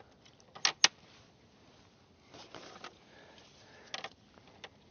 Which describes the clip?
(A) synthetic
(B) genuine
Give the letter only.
B